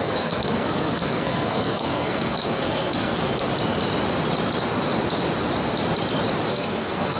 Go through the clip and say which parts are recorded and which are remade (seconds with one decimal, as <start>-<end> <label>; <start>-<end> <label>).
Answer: 0.0-3.5 remade; 3.5-6.5 recorded; 6.5-7.2 remade